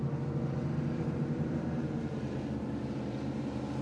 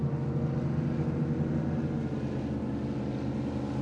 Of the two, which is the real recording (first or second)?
second